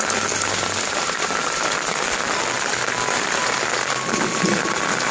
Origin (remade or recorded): recorded